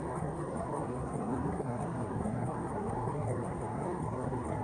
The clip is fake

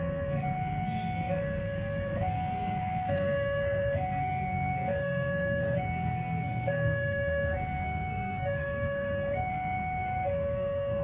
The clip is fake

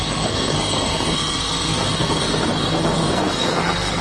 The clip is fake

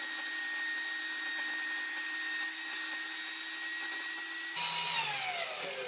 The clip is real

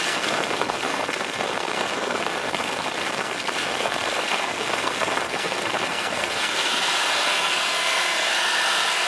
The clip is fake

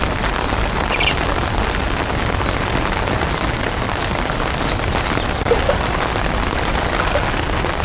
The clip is real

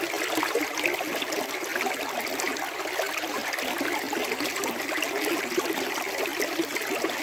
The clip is real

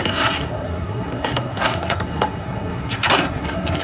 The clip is fake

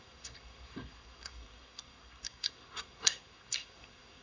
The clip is fake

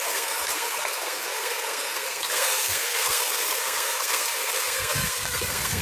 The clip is fake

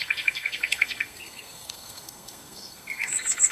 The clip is fake